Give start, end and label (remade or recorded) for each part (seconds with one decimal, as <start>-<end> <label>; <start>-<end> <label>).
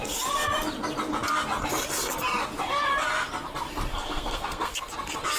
0.0-3.9 recorded; 3.9-4.9 remade; 4.9-5.4 recorded